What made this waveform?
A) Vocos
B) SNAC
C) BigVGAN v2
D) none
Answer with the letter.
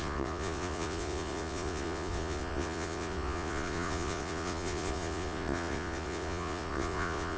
A